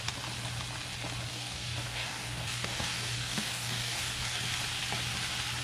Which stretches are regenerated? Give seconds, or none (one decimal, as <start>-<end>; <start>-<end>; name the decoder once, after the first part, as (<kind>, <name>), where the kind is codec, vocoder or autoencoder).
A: 1.3-4.4 (codec, DAC)